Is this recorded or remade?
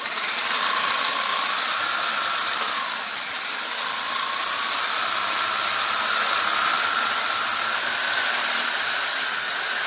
recorded